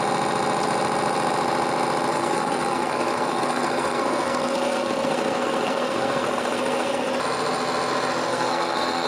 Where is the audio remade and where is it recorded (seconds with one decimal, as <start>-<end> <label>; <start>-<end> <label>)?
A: 0.0-2.1 recorded; 2.1-7.1 remade; 7.1-8.3 recorded; 8.3-9.1 remade